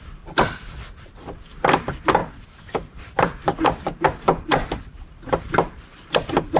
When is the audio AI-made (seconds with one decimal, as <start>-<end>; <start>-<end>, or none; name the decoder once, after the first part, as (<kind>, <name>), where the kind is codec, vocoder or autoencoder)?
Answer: 2.2-4.7 (vocoder, BigVGAN v2); 5.9-6.6